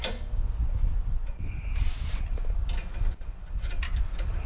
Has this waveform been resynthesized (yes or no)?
no